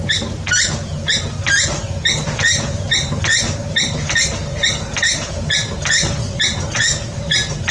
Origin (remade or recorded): recorded